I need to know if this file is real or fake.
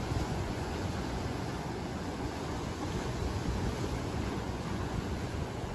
fake